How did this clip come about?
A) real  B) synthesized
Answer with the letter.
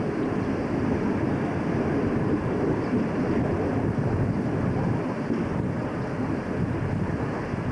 A